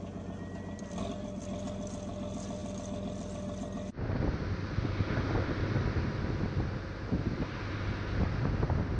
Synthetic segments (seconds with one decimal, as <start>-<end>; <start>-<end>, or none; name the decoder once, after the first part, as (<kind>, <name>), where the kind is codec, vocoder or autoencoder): none